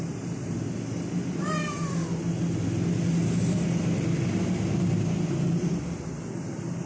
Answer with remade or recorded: recorded